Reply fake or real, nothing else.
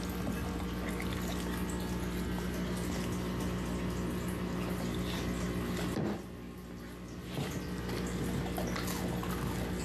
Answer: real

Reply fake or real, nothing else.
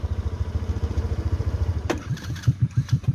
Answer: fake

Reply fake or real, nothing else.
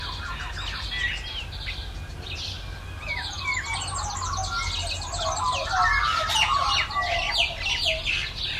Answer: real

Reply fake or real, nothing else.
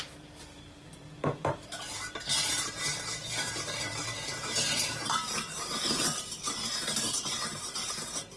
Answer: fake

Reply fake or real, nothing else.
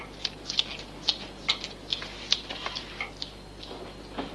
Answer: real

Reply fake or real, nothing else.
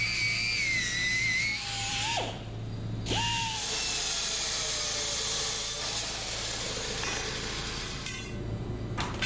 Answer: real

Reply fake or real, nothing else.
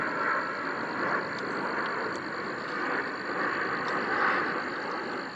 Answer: real